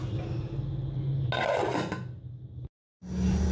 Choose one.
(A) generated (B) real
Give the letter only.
B